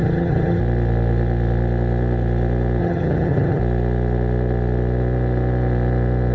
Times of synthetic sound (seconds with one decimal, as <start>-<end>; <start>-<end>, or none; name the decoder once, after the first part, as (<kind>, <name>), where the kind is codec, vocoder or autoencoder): 0.0-0.6 (vocoder, HiFi-GAN); 2.8-3.6